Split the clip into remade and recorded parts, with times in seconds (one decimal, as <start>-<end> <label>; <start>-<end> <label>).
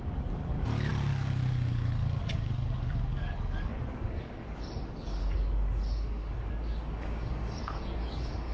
0.0-8.5 remade